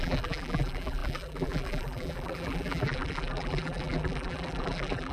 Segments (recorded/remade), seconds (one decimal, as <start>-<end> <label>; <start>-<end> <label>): 0.0-5.1 remade